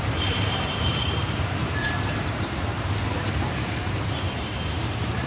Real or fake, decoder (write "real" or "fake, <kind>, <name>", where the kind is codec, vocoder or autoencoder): fake, vocoder, BigVGAN v2